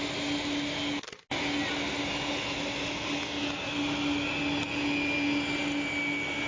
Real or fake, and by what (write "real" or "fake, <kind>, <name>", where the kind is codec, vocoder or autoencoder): real